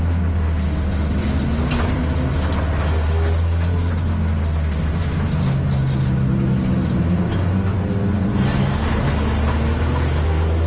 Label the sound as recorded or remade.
recorded